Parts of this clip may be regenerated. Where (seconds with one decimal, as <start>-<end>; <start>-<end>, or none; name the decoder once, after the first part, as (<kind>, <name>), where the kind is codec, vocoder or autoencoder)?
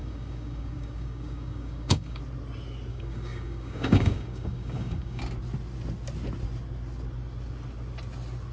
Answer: 0.0-2.2 (codec, DAC); 2.9-5.2